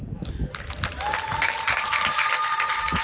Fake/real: real